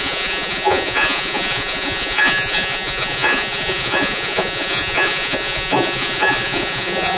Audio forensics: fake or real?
fake